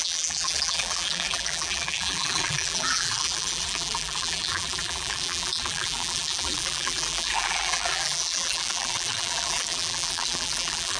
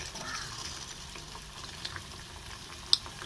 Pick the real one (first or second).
second